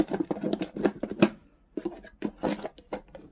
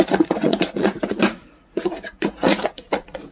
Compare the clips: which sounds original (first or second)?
first